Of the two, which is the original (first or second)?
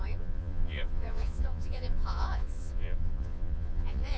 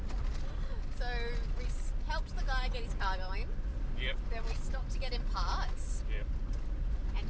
second